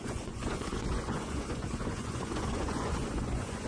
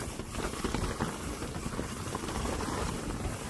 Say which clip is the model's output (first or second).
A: first